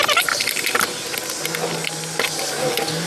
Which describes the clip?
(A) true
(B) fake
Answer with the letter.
A